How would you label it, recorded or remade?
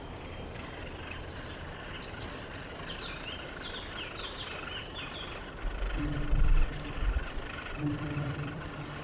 remade